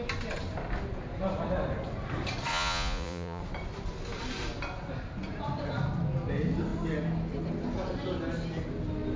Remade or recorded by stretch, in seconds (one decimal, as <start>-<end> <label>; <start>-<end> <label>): 0.0-2.5 recorded; 2.5-3.4 remade; 3.4-9.2 recorded